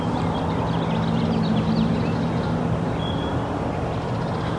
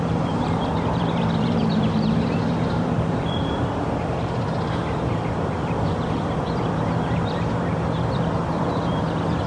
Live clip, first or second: first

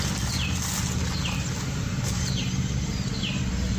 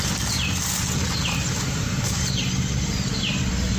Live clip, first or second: first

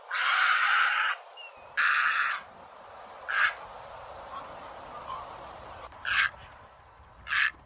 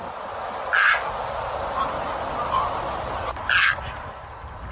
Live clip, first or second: second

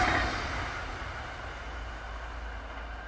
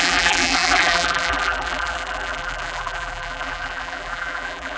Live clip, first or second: first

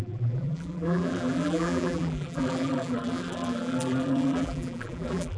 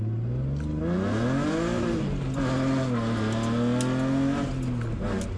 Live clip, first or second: second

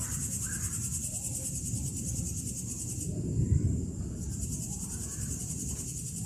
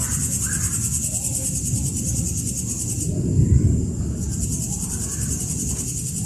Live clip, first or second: second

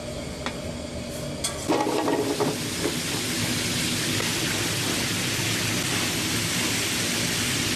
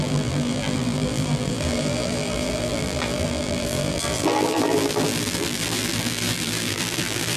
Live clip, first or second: first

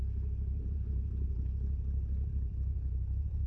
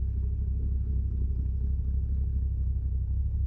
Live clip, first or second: second